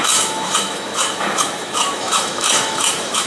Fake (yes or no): yes